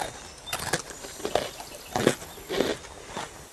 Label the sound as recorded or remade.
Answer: recorded